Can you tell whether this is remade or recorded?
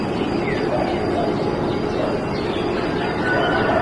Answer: recorded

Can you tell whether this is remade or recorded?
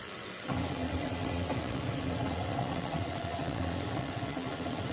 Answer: remade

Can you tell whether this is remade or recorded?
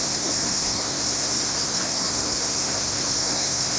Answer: remade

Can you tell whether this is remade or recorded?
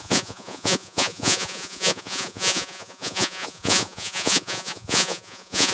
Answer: remade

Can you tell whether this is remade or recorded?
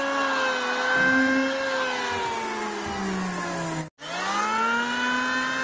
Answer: recorded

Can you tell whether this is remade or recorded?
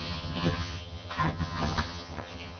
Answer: remade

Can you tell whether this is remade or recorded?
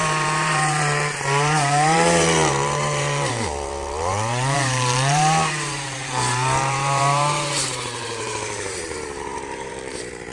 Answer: remade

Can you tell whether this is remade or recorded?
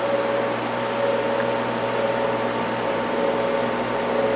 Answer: recorded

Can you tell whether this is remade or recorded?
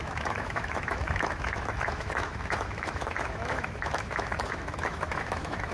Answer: remade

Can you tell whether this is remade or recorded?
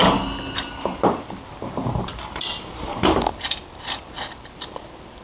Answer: recorded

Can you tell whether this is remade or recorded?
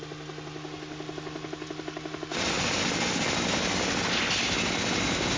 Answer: recorded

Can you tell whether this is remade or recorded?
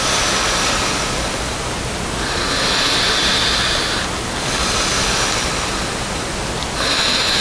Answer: recorded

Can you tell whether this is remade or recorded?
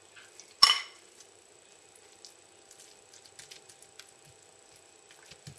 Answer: recorded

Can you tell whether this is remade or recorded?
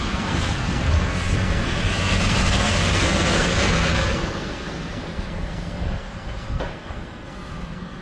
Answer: remade